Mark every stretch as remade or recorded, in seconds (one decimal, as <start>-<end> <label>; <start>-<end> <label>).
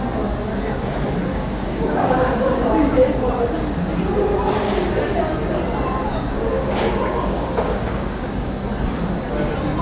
0.0-1.3 recorded; 1.3-3.1 remade; 3.1-6.0 recorded; 6.0-8.6 remade; 8.6-9.8 recorded